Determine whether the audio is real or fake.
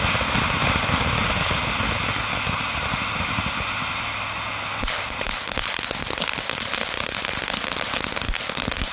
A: real